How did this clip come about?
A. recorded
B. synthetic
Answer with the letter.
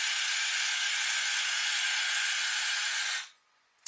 B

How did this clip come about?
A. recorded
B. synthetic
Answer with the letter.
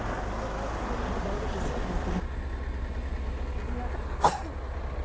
A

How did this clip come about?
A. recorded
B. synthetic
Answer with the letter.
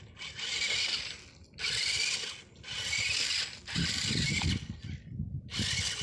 A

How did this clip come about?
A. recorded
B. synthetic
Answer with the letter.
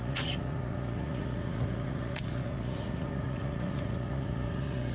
B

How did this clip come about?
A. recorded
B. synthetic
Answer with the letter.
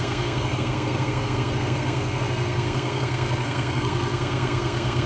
B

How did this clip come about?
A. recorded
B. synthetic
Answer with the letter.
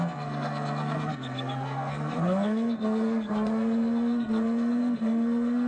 B